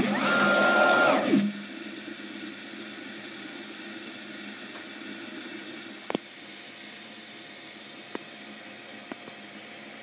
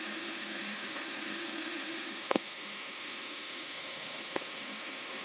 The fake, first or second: second